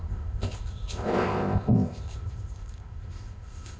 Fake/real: fake